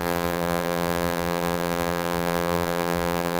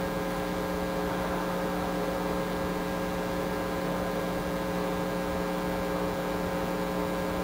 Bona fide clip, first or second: second